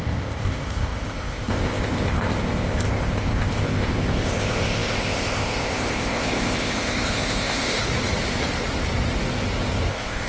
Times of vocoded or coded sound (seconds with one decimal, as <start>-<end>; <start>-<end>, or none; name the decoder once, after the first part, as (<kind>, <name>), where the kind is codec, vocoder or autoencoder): 0.0-7.8 (codec, ZipCodec); 9.9-10.3